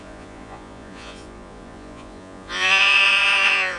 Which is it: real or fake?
fake